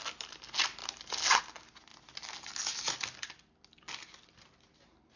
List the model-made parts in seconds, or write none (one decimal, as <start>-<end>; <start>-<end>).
none